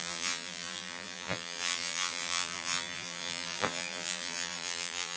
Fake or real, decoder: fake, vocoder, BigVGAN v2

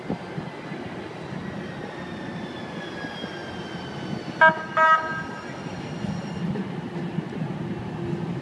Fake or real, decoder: real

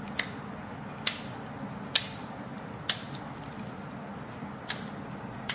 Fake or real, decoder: real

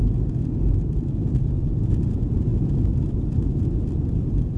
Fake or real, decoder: real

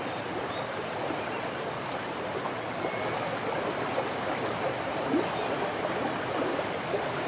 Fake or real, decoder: real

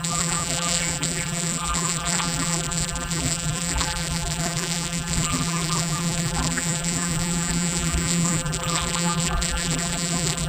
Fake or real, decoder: fake, vocoder, BigVGAN v2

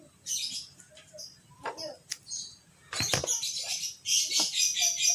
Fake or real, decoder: real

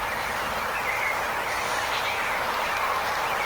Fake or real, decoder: fake, vocoder, BigVGAN v2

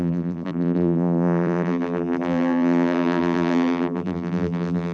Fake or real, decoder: fake, vocoder, BigVGAN v2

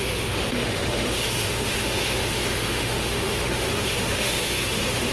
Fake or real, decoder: fake, autoencoder, DAC-VAE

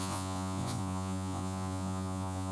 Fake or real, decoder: fake, vocoder, Vocos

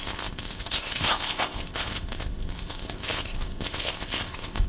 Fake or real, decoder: fake, codec, ZipCodec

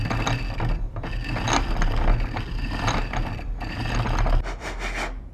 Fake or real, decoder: real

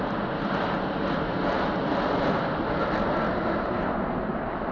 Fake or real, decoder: real